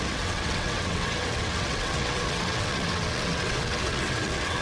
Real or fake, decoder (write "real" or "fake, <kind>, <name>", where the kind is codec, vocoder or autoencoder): fake, vocoder, WaveNeXt